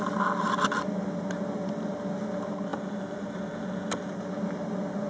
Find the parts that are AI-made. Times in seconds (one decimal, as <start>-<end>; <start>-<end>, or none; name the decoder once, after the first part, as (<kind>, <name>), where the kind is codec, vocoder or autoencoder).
none

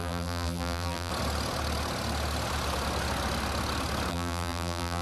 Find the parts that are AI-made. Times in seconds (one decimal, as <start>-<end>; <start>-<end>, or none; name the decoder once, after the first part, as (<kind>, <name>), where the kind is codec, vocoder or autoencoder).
0.0-1.1 (vocoder, BigVGAN v2); 4.1-5.0

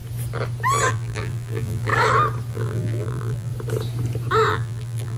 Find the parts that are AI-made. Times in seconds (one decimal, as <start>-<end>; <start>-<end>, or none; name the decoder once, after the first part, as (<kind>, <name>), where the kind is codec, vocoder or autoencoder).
0.9-1.9 (vocoder, BigVGAN v2); 2.5-3.5; 4.5-5.2